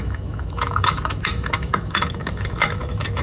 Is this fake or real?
fake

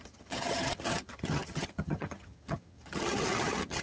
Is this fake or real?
fake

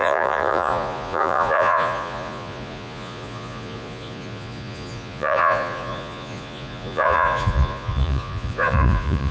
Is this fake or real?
fake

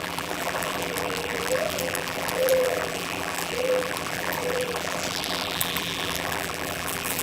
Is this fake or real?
fake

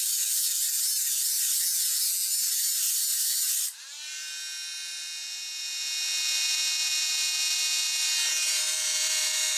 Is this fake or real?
fake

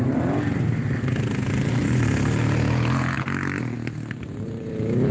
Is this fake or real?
real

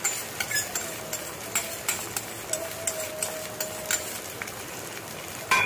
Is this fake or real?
real